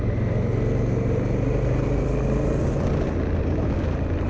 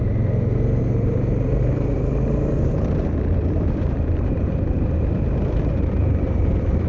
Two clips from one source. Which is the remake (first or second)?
second